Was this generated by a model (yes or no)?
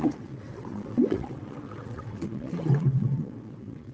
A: yes